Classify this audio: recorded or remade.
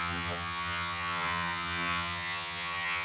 remade